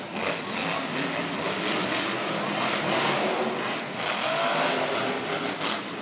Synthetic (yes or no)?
no